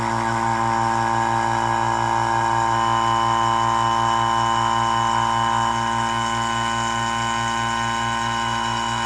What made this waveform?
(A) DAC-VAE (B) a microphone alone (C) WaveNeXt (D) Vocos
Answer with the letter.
B